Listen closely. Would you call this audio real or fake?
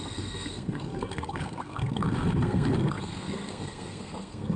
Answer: fake